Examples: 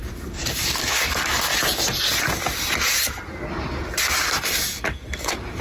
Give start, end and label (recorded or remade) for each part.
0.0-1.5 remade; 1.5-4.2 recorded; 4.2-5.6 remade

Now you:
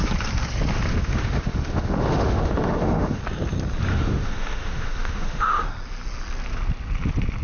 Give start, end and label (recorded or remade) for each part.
0.0-0.9 recorded; 0.9-3.2 remade; 3.2-3.9 recorded; 3.9-5.4 remade; 5.4-7.4 recorded